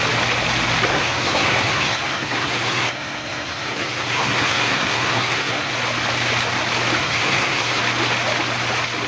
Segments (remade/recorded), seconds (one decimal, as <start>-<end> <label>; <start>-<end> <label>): 0.0-0.9 recorded; 0.9-5.7 remade; 5.7-7.0 recorded; 7.0-7.8 remade; 7.8-9.1 recorded